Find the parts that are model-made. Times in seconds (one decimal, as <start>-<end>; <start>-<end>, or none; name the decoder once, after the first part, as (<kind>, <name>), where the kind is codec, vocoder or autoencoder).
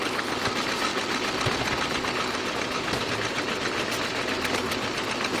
none